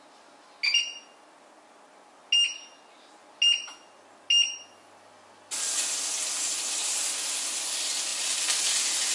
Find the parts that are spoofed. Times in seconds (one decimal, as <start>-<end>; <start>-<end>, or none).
none